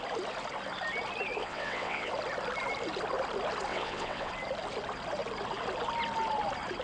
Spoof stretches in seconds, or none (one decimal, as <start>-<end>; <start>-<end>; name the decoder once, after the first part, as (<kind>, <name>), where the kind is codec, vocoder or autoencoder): 1.4-2.1 (vocoder, WaveNeXt); 3.7-4.3

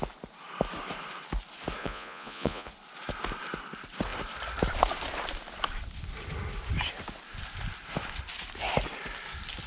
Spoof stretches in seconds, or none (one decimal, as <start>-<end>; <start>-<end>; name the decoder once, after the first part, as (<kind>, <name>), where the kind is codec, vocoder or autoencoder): 1.8-2.7 (vocoder, Vocos)

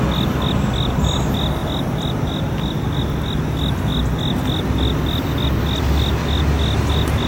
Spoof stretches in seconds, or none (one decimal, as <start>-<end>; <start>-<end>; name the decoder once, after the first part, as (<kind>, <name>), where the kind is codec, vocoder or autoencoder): none

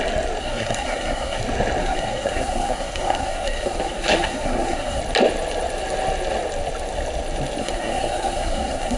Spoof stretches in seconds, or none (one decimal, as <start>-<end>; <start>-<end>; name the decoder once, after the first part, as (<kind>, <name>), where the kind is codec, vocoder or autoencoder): 0.4-1.4 (codec, SNAC); 1.8-5.0; 7.6-9.0

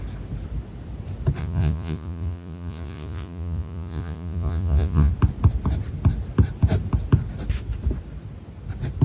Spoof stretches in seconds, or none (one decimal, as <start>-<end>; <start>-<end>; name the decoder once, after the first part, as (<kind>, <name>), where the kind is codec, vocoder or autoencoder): 1.4-5.1 (vocoder, Vocos)

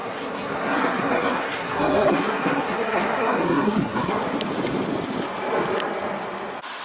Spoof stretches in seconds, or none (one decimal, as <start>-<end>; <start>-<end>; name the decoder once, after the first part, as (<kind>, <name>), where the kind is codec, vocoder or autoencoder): 0.0-4.1 (codec, SNAC)

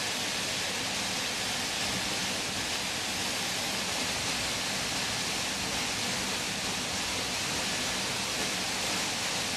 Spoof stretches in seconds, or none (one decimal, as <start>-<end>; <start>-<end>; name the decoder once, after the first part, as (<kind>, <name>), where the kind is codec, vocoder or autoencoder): none

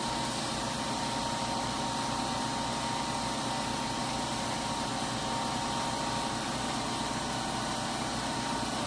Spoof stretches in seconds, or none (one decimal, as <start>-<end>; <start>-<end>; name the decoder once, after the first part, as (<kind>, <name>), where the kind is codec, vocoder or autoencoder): 0.0-1.5 (vocoder, BigVGAN v2); 4.0-4.7